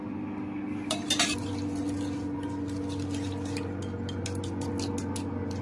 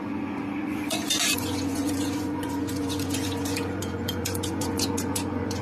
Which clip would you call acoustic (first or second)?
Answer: first